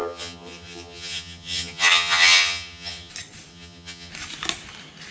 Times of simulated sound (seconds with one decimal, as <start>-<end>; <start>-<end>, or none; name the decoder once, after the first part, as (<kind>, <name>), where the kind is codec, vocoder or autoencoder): 0.0-3.1 (vocoder, HiFi-GAN); 3.5-4.1